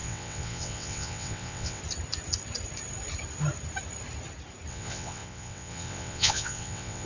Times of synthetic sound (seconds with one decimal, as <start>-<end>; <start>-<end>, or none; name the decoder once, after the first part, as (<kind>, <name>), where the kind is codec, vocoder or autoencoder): 0.0-1.8 (vocoder, WaveNeXt); 4.7-7.0